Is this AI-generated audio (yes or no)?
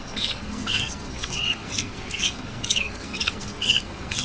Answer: yes